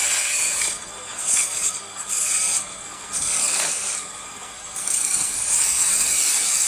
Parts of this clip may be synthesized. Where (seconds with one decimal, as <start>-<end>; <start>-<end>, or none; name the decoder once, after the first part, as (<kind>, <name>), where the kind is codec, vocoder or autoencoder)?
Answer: 0.0-6.7 (codec, SNAC)